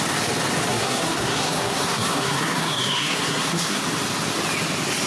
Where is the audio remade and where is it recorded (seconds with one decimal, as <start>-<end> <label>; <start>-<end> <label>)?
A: 0.0-0.7 recorded; 0.7-3.8 remade; 3.8-5.1 recorded